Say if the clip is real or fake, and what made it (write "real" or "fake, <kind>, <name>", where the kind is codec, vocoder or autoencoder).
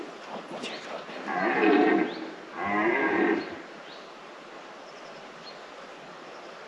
real